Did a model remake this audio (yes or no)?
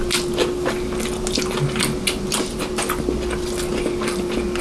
no